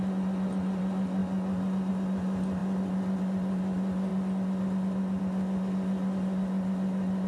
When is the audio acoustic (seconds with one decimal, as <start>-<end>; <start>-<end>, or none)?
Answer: 0.0-7.3